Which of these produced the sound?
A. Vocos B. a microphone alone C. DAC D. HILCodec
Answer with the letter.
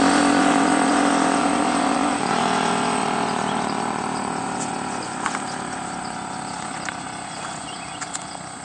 A